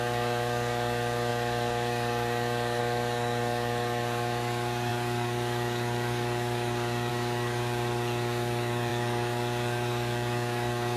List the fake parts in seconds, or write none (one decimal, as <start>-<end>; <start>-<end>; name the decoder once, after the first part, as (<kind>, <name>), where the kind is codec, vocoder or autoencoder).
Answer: 0.0-11.0 (codec, DAC)

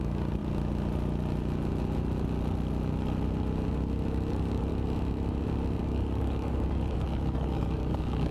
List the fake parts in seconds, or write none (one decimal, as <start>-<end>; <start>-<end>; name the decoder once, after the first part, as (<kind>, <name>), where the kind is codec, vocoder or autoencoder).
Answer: 0.0-0.4 (codec, DAC); 4.3-4.7; 5.8-8.3